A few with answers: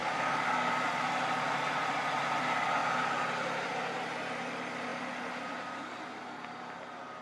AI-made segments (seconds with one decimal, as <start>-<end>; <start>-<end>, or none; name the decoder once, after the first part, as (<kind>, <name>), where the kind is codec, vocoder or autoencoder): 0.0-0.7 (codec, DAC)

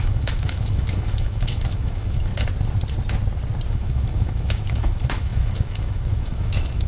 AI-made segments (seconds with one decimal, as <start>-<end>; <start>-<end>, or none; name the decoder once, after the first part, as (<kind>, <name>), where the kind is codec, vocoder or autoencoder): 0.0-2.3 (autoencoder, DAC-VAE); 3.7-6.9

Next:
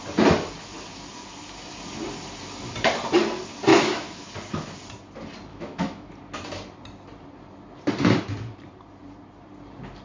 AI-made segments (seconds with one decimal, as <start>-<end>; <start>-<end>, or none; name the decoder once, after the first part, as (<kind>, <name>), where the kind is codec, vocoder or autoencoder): 3.7-4.3 (autoencoder, DAC-VAE); 5.5-6.1

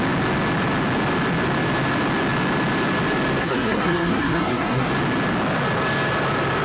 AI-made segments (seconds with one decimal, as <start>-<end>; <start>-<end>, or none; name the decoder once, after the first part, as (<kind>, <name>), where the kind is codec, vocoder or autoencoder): 3.4-4.9 (codec, SNAC)